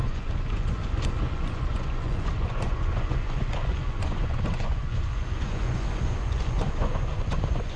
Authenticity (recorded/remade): remade